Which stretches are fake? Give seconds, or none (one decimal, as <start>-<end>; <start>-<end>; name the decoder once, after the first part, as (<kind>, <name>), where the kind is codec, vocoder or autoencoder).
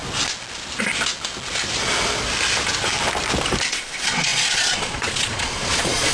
3.7-6.1 (vocoder, Vocos)